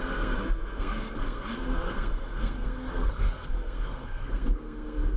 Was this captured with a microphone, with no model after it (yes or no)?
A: no